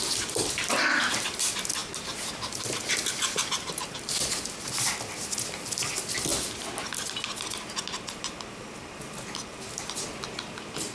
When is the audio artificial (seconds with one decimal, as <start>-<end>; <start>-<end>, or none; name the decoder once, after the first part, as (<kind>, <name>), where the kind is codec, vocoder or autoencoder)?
1.8-4.8 (vocoder, BigVGAN v2)